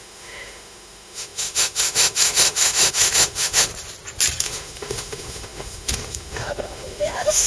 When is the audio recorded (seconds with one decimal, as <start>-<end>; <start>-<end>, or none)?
3.7-4.4